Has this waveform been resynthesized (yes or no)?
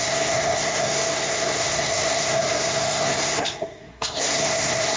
yes